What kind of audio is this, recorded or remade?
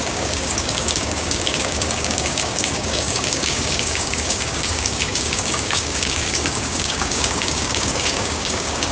remade